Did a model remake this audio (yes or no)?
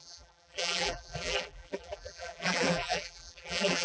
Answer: yes